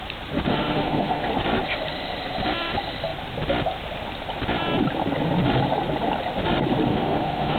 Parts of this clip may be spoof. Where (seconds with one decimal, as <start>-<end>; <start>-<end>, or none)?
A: 0.5-1.3; 6.9-7.6